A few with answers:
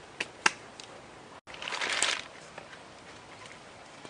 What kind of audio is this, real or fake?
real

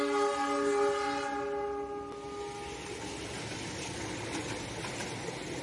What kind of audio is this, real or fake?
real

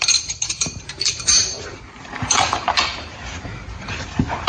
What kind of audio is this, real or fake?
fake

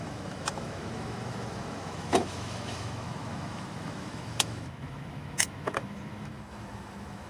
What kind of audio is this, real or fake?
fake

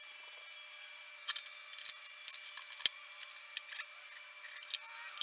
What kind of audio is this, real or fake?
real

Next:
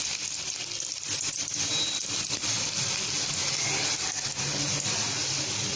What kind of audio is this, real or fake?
real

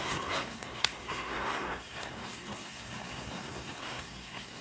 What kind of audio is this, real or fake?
fake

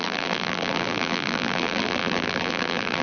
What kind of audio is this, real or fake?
fake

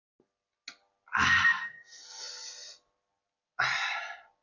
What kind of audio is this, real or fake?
real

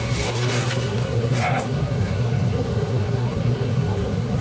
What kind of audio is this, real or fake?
fake